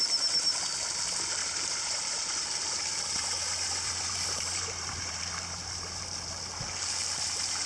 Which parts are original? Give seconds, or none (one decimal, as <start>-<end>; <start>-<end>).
0.0-1.4; 6.0-7.7